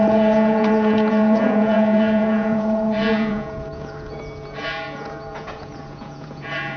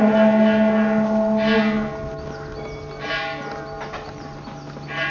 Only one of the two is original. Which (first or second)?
second